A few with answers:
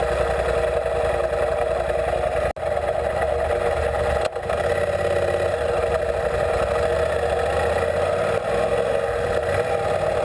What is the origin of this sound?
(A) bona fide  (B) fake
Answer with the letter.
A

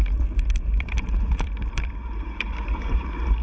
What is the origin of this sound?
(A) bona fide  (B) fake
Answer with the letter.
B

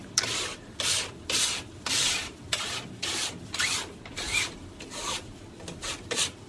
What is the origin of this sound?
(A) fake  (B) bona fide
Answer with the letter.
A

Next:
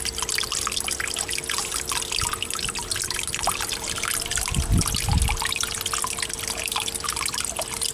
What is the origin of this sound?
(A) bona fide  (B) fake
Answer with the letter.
B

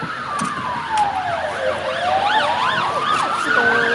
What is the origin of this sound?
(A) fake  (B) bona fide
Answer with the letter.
B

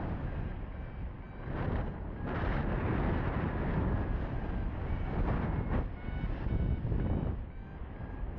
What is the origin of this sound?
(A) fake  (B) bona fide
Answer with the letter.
B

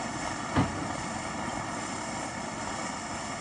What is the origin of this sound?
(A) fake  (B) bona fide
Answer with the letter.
B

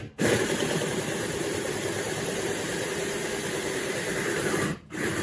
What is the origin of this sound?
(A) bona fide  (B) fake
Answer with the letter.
B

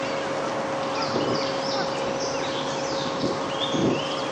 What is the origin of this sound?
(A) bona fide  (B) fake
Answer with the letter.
A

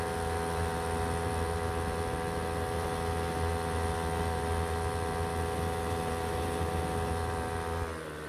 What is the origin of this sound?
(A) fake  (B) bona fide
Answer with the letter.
B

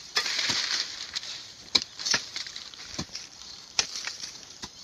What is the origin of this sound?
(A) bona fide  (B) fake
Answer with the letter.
B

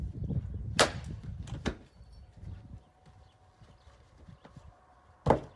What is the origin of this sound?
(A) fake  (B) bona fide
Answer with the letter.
B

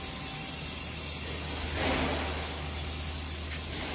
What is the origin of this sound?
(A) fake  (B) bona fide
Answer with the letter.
B